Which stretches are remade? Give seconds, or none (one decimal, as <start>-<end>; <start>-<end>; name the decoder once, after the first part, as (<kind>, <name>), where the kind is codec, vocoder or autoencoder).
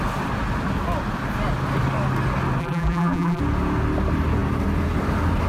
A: 2.6-3.4 (vocoder, BigVGAN v2)